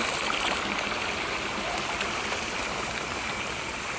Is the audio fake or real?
real